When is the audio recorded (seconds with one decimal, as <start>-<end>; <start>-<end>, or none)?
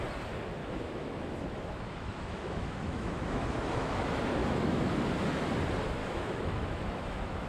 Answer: 0.0-0.6; 4.0-4.4; 5.0-6.0